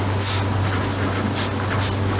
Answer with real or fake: real